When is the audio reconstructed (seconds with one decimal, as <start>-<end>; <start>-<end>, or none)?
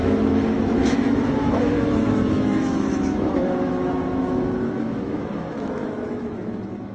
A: 0.0-6.9